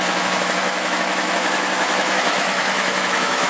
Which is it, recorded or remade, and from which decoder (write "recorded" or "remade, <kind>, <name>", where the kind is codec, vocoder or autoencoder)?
remade, autoencoder, DAC-VAE